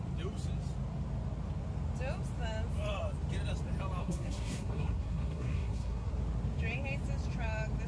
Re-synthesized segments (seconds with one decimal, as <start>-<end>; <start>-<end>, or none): 4.0-6.1